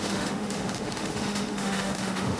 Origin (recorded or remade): remade